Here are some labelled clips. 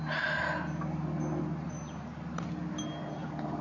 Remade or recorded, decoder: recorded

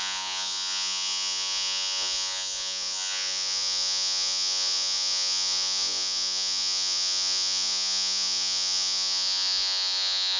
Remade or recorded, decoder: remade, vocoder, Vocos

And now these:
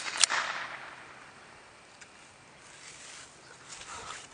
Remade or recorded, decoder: recorded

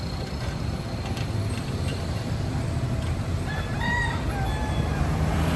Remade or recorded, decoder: recorded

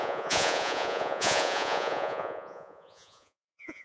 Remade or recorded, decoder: remade, vocoder, Vocos